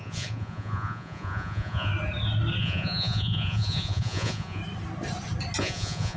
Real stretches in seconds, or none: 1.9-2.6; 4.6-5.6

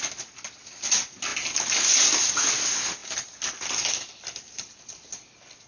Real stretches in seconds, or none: 0.0-5.7

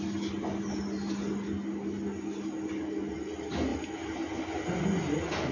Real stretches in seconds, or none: 0.0-5.5